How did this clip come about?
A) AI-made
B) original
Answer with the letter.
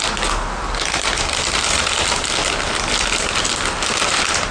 B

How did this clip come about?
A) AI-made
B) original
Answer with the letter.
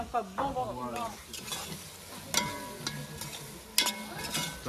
B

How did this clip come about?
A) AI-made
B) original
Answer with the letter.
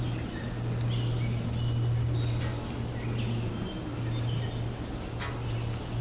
B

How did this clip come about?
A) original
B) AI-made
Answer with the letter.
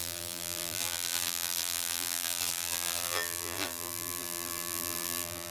B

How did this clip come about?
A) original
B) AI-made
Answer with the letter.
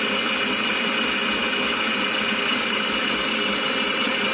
A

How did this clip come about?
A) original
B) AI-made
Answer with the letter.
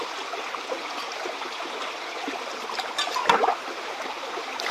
A